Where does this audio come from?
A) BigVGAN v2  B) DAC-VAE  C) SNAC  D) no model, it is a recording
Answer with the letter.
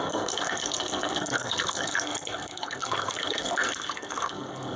C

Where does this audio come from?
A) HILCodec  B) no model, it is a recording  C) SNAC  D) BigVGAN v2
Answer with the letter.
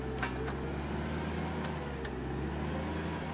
B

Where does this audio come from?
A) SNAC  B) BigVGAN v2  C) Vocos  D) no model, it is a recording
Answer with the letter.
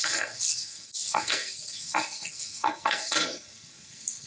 A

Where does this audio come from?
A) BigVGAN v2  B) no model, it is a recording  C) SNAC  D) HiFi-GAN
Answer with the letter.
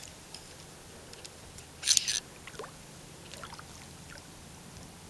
B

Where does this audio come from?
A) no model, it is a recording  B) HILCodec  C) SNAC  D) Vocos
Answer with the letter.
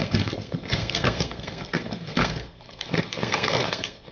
C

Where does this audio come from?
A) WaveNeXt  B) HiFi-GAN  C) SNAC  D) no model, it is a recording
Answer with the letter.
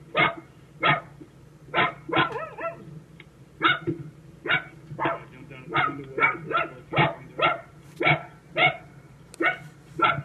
D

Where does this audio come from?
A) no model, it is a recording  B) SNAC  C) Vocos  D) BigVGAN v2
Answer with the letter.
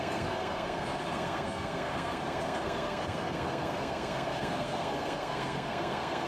B